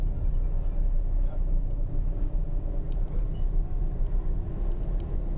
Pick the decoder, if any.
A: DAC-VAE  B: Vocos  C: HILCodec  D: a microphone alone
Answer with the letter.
D